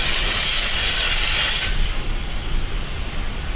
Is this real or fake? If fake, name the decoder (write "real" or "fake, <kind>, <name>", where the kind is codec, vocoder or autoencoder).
real